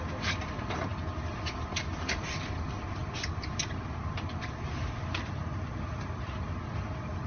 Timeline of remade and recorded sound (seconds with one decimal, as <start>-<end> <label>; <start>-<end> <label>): 0.0-7.3 recorded